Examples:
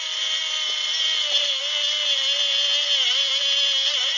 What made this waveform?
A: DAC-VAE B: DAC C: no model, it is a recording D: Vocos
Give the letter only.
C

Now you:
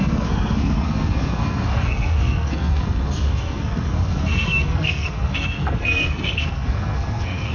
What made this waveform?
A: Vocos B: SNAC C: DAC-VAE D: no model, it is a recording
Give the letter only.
B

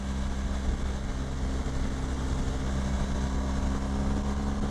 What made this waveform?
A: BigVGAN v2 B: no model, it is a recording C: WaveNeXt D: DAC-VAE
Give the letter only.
B